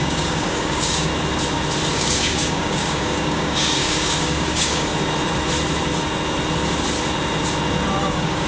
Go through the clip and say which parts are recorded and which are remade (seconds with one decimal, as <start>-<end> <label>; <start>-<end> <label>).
0.0-1.1 remade; 1.1-1.9 recorded; 1.9-4.9 remade; 4.9-8.0 recorded; 8.0-8.5 remade